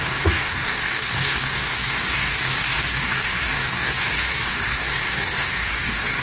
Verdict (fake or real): fake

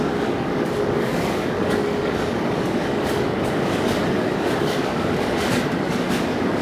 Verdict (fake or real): fake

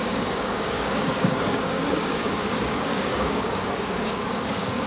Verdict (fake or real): fake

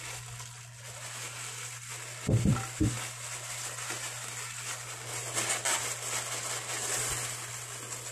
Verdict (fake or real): real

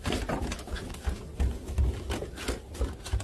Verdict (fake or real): real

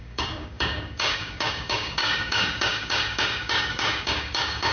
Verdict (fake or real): fake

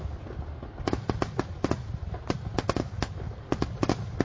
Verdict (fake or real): real